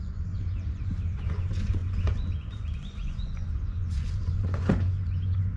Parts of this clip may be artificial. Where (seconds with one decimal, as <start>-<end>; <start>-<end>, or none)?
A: 0.0-5.6